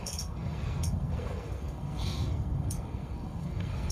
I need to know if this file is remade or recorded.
remade